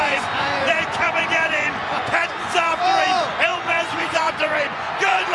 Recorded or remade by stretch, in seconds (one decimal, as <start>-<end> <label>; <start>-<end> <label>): 0.0-5.3 remade